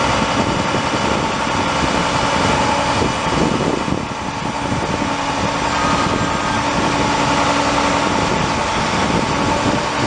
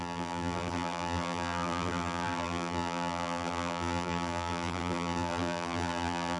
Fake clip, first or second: second